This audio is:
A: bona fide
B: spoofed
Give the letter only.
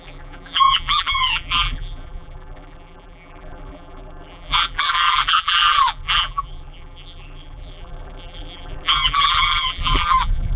B